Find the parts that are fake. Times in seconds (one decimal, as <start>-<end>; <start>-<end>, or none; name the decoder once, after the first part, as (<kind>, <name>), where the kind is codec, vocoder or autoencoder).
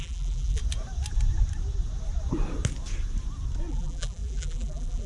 0.0-0.6 (vocoder, BigVGAN v2); 3.7-5.1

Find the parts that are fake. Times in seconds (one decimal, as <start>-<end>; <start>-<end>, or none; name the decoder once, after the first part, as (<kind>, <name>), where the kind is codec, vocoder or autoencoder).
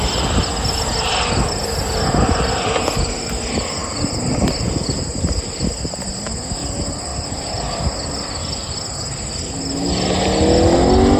3.8-5.7 (vocoder, BigVGAN v2); 7.1-7.7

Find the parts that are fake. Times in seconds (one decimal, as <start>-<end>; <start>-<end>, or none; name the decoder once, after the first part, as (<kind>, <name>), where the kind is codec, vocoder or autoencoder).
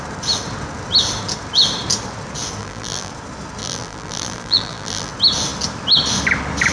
2.6-3.1 (vocoder, BigVGAN v2); 3.6-5.1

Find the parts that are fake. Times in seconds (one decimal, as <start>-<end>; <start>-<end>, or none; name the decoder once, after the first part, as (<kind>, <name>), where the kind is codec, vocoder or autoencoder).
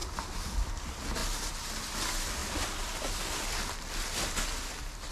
0.0-0.7 (vocoder, BigVGAN v2); 1.2-1.8; 2.4-4.2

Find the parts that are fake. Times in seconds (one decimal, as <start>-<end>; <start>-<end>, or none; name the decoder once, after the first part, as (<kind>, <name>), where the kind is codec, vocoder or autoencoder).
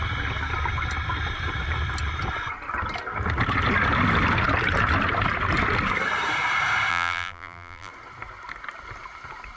6.9-7.9 (vocoder, BigVGAN v2)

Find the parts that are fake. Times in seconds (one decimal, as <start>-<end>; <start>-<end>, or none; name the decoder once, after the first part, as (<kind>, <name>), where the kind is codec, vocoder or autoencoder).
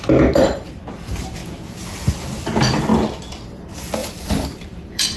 0.0-1.4 (vocoder, BigVGAN v2); 2.1-2.9; 3.4-5.2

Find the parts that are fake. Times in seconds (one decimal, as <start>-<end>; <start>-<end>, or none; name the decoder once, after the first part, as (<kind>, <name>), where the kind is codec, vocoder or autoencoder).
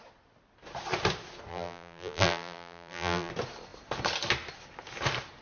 1.5-3.3 (vocoder, BigVGAN v2)